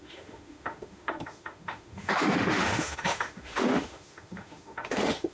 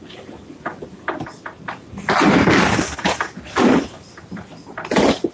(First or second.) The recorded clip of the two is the second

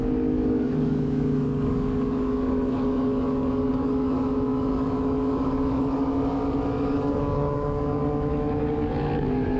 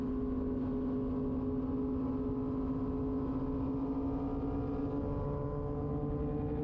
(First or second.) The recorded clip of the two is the second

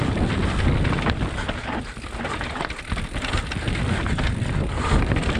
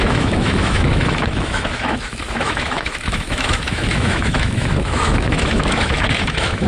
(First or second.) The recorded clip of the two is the first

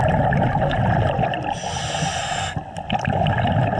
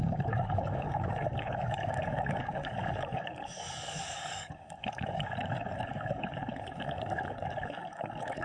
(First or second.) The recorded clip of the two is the first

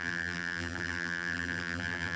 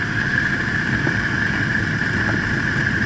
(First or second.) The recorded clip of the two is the second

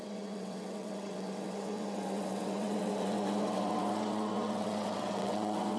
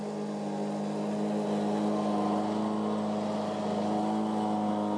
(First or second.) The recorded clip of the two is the second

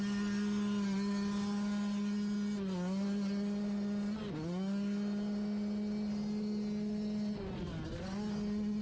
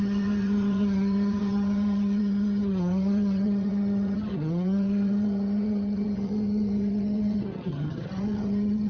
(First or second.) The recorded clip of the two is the first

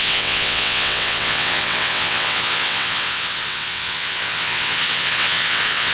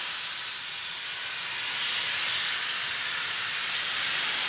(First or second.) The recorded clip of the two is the second